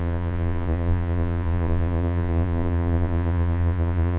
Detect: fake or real fake